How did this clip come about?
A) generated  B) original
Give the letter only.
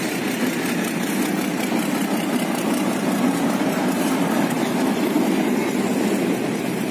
B